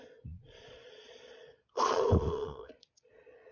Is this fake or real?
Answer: fake